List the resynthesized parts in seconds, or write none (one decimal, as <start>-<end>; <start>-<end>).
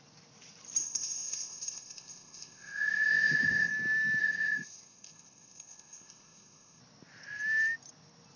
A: 0.8-3.7; 4.2-6.8